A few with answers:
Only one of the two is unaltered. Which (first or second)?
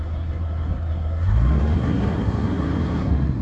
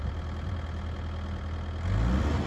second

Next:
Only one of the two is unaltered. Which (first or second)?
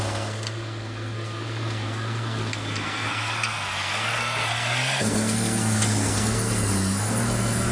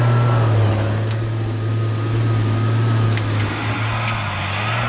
second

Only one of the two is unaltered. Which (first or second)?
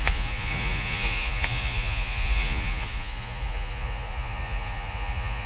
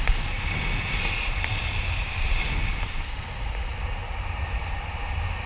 second